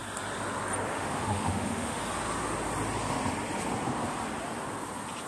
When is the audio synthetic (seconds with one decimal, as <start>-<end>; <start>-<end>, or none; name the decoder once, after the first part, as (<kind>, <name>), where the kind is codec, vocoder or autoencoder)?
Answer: 0.9-2.0 (autoencoder, DAC-VAE)